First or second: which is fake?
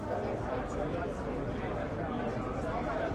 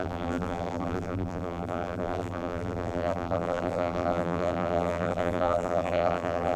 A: second